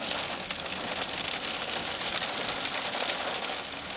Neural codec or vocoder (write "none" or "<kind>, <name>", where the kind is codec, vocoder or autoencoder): none